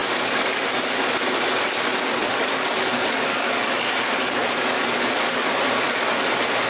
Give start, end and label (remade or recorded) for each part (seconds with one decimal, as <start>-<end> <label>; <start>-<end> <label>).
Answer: 0.0-1.0 remade; 1.0-1.9 recorded; 1.9-5.5 remade; 5.5-6.7 recorded